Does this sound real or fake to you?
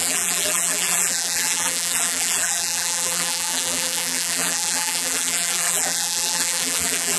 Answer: fake